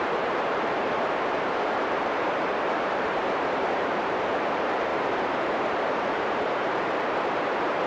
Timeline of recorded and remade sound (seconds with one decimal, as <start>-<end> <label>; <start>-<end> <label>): 0.0-7.9 remade